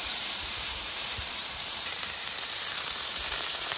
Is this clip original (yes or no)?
no